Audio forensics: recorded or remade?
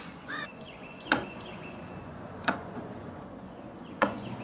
remade